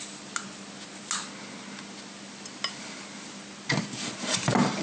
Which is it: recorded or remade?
recorded